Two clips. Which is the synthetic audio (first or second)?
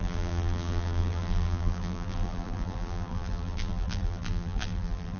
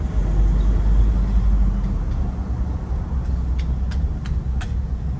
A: first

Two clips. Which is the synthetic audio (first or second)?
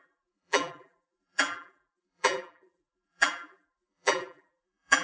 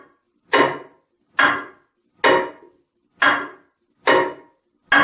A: first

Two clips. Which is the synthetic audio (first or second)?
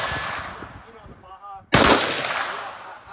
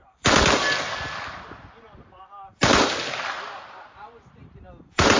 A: second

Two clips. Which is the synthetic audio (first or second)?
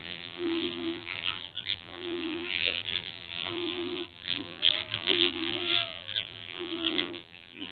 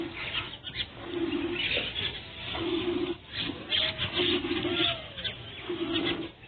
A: first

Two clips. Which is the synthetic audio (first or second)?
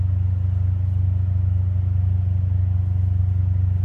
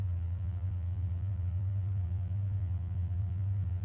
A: second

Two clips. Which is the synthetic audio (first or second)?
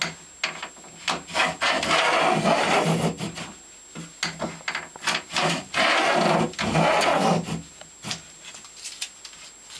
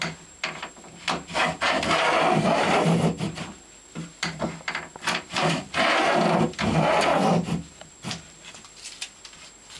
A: second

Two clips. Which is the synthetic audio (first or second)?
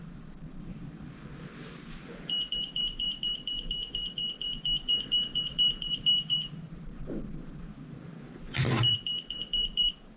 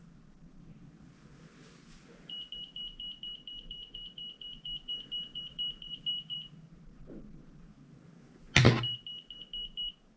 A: first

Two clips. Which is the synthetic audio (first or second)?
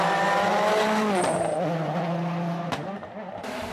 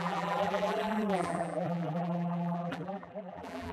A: second